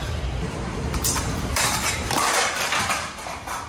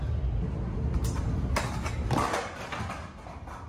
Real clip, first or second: second